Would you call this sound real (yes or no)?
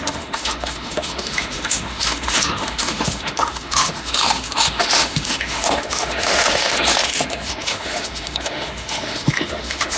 no